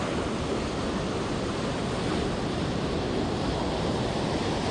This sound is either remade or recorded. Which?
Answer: recorded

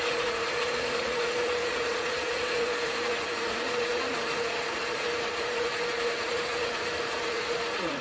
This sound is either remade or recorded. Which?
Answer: remade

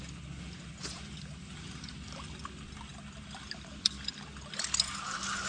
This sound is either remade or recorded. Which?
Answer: recorded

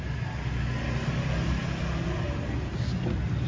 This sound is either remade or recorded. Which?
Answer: recorded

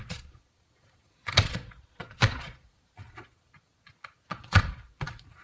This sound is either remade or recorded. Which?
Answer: remade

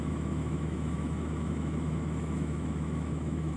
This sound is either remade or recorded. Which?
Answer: remade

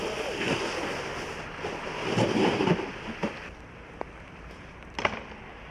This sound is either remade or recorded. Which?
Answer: recorded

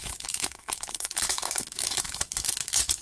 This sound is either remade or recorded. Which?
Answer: remade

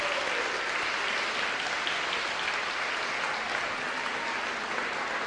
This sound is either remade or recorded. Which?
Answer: recorded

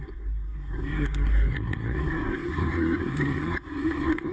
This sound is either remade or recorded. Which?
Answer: remade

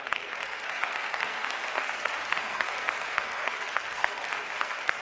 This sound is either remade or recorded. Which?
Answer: remade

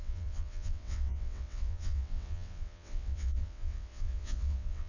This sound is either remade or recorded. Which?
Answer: remade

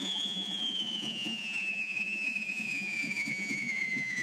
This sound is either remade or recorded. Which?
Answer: remade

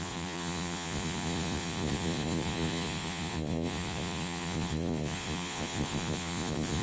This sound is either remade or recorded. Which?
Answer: remade